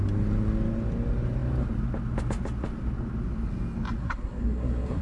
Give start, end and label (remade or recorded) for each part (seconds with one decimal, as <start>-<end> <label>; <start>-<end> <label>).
0.0-4.0 recorded; 4.0-5.0 remade